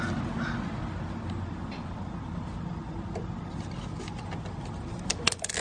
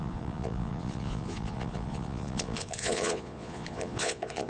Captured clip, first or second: first